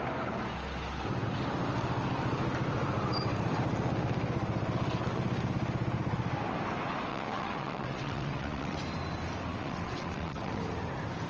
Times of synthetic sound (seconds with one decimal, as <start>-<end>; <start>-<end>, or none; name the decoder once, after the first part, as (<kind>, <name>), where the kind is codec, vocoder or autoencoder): 7.1-8.8 (vocoder, WaveNeXt); 9.5-10.6